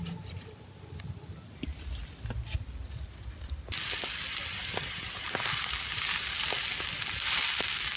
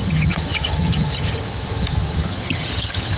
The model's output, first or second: second